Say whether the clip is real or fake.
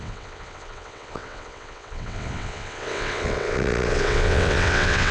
fake